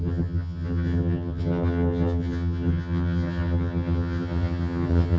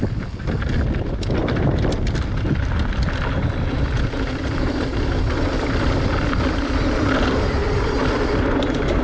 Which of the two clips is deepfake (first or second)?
first